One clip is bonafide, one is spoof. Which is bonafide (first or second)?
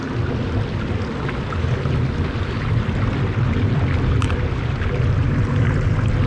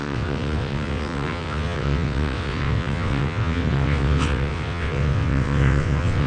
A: first